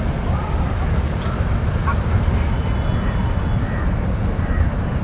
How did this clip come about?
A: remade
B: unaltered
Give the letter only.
B